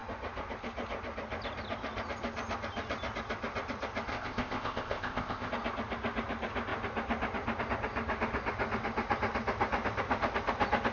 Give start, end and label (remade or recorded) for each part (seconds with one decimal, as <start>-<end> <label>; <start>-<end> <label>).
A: 0.0-4.1 recorded; 4.1-5.5 remade; 5.5-10.9 recorded